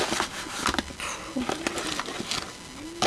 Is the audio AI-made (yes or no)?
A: no